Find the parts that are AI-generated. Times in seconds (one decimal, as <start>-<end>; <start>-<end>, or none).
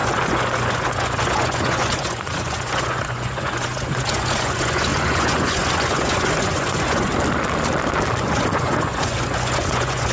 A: 0.0-7.1; 8.2-10.1